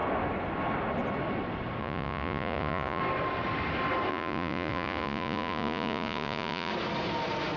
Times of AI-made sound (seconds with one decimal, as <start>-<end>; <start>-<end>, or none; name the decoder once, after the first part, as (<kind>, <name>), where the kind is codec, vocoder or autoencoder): 1.8-3.0 (vocoder, Vocos); 4.1-6.7